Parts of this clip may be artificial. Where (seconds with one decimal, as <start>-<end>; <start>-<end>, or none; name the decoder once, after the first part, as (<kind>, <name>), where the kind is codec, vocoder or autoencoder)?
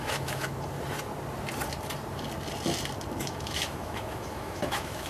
0.0-0.5 (autoencoder, DAC-VAE); 3.2-5.1